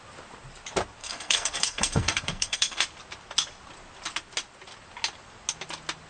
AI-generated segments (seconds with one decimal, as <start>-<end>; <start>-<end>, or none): 1.0-2.8